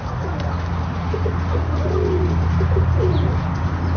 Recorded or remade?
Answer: recorded